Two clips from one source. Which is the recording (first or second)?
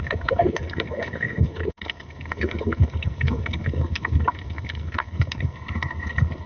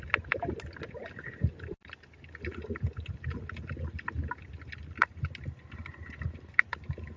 second